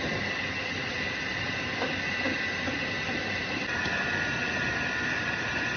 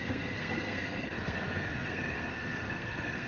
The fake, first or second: second